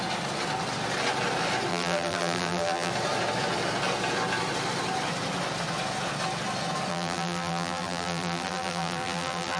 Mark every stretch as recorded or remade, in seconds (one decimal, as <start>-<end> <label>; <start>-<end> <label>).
0.0-1.7 recorded; 1.7-2.9 remade; 2.9-6.9 recorded; 6.9-9.6 remade